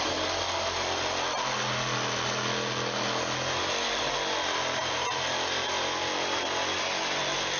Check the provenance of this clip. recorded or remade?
recorded